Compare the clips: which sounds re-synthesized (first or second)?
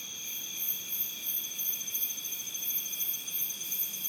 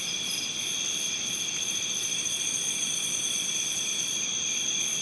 first